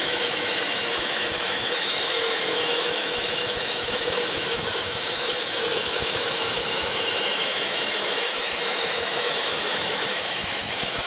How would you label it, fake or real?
fake